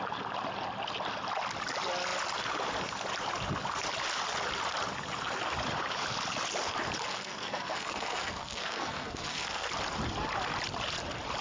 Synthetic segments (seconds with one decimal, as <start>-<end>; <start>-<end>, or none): 7.1-9.7